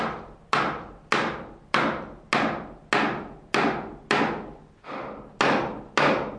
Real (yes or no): yes